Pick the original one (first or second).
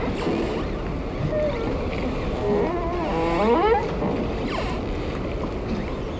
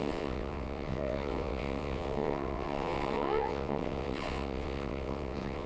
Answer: first